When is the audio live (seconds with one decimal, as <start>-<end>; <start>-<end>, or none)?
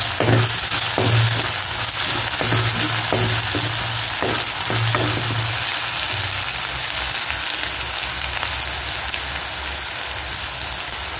0.0-11.2